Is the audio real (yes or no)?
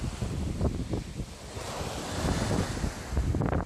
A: yes